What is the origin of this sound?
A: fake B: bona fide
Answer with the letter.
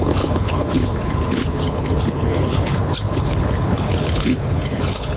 A